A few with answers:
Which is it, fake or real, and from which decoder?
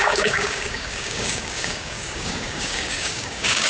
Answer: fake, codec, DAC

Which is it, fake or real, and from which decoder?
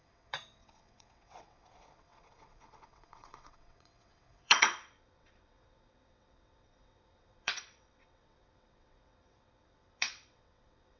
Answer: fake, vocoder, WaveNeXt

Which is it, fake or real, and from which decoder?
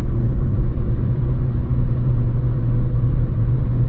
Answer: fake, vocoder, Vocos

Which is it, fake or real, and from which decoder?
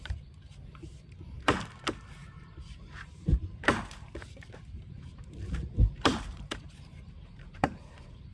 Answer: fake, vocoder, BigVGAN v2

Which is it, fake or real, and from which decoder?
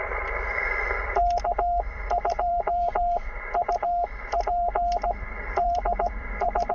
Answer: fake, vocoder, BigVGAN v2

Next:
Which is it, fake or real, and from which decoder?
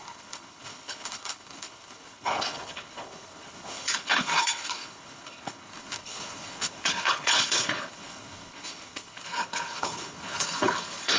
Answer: fake, codec, HILCodec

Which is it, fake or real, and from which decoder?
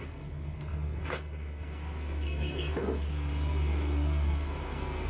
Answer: fake, codec, SNAC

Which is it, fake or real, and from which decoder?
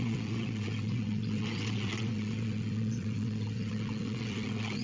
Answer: fake, vocoder, WaveNeXt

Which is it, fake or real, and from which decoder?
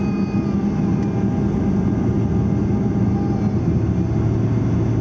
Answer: real